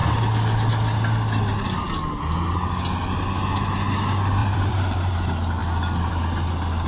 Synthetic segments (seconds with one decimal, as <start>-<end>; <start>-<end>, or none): 4.4-5.1